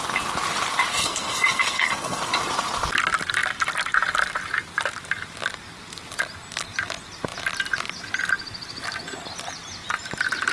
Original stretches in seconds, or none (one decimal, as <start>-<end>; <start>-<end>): 0.0-0.9; 2.2-10.5